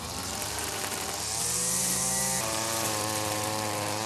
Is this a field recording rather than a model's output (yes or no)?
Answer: no